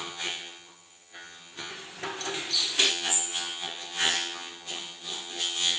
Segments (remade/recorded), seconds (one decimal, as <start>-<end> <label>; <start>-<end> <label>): 0.0-1.7 remade; 1.7-2.9 recorded; 2.9-5.8 remade